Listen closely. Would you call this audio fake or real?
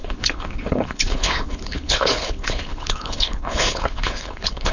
fake